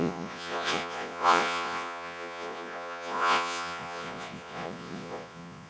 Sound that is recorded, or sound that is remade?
remade